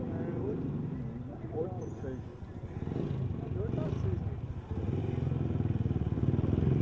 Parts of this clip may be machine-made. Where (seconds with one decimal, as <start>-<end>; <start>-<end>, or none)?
none

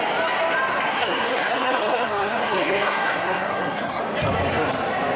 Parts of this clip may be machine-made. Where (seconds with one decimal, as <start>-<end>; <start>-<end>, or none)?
0.9-4.0